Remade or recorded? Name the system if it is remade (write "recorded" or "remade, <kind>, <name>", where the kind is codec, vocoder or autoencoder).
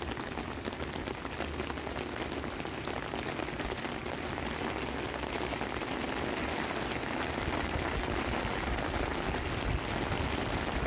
recorded